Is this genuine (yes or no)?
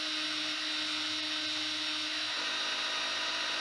yes